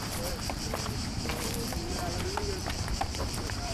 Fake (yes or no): yes